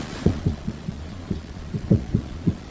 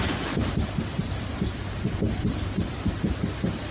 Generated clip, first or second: first